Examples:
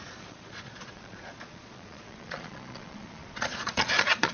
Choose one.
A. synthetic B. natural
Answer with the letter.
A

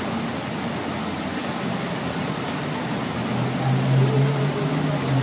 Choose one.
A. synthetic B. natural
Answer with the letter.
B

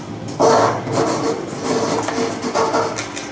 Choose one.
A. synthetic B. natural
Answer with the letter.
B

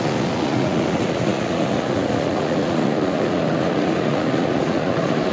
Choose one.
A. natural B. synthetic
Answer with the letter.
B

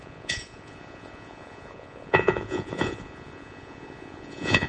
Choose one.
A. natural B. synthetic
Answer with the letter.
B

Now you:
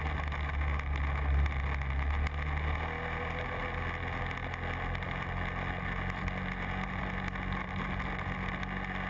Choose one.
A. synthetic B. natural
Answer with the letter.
B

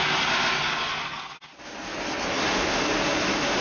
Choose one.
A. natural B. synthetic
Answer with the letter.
A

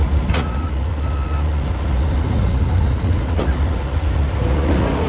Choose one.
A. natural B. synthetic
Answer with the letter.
B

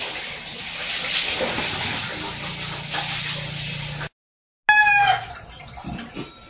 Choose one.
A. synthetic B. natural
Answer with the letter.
B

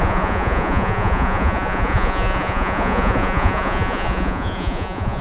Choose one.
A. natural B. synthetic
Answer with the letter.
B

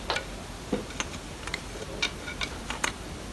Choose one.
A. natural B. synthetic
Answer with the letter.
A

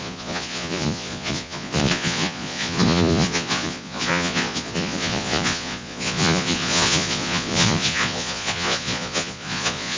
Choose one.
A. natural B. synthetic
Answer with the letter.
B